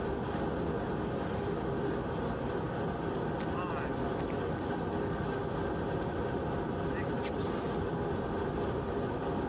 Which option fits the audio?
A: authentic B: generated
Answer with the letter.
A